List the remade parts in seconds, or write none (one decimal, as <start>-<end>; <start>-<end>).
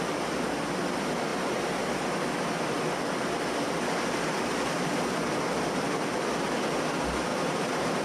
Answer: 7.3-8.0